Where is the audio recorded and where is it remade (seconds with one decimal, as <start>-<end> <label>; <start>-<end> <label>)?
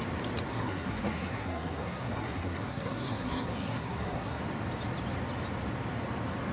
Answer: 0.0-0.5 recorded; 0.5-4.4 remade; 4.4-6.5 recorded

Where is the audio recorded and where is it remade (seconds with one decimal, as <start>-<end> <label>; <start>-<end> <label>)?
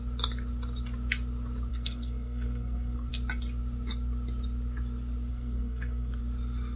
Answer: 0.0-1.7 recorded; 1.7-3.1 remade; 3.1-5.3 recorded; 5.3-6.2 remade; 6.2-6.8 recorded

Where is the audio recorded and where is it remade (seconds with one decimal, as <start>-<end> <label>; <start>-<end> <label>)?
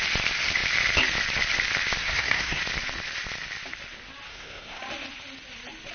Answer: 0.0-2.0 recorded; 2.0-2.6 remade; 2.6-4.3 recorded; 4.3-4.8 remade; 4.8-5.9 recorded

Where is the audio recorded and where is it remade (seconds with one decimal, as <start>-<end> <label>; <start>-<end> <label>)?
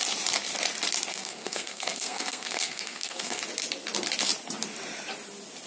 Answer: 0.0-1.1 recorded; 1.1-3.4 remade; 3.4-5.7 recorded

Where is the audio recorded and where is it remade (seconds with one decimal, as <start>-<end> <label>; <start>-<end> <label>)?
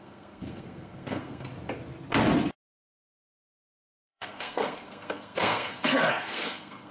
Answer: 0.0-1.5 remade; 1.5-3.6 recorded; 3.6-6.9 remade